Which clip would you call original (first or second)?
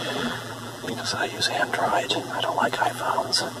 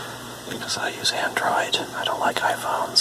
second